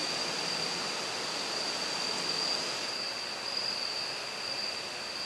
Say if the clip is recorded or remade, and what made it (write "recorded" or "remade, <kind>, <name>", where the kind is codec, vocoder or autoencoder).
recorded